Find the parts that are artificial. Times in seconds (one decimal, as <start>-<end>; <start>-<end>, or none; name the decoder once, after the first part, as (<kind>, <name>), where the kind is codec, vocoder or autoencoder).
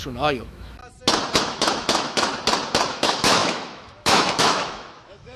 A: 0.0-0.8 (autoencoder, DAC-VAE); 1.4-2.3; 2.9-5.4